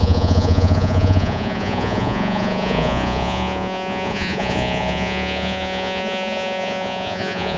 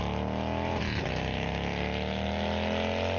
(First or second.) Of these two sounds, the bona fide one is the second